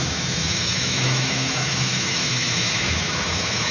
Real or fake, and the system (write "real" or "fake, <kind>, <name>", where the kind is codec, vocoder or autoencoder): fake, autoencoder, DAC-VAE